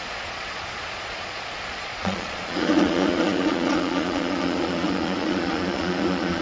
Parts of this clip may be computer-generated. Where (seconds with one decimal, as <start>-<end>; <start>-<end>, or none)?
0.0-6.4